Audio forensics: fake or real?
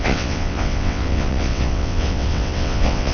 fake